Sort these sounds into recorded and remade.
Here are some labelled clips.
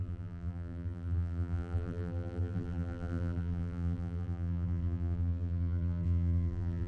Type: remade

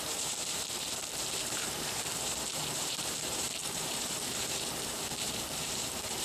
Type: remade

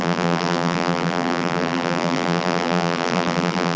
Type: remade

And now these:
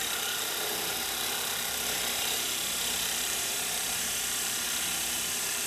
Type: remade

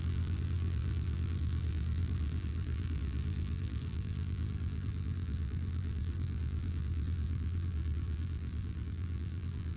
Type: remade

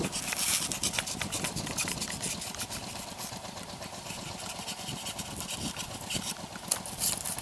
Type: recorded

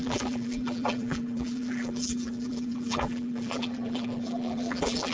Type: remade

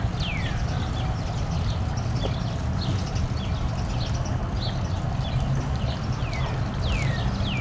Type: recorded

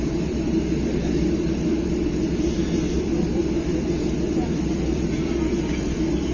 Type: remade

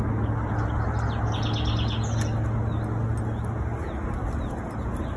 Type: recorded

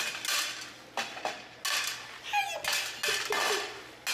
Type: recorded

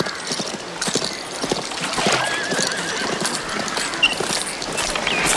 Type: recorded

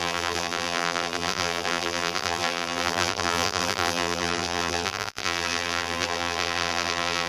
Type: remade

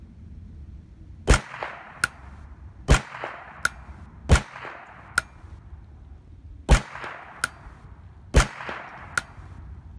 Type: recorded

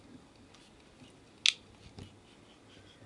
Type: recorded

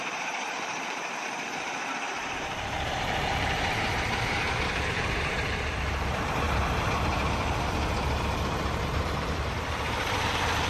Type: remade